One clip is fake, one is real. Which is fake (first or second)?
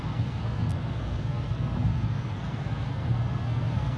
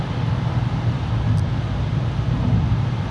first